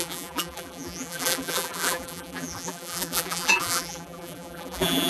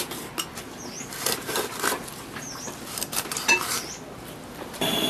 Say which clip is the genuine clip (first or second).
second